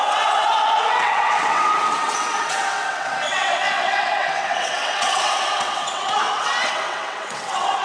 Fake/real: fake